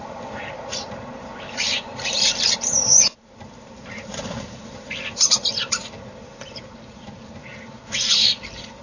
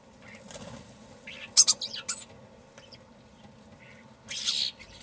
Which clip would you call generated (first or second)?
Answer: first